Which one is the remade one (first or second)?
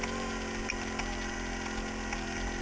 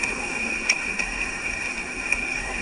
second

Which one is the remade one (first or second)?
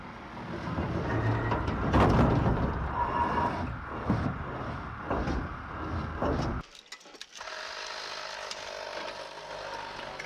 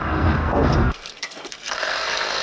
second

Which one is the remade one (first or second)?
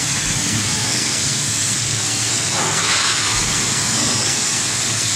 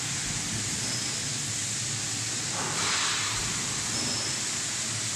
first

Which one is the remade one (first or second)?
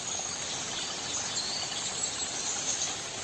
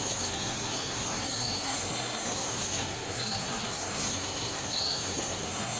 second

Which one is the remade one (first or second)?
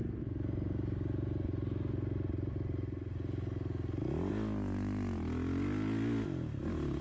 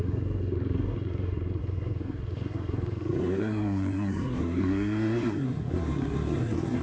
second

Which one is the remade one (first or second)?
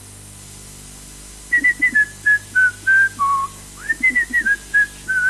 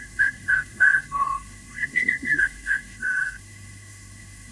second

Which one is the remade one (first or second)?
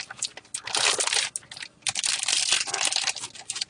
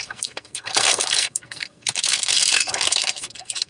second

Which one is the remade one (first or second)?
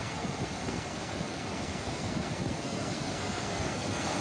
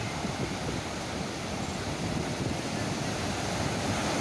first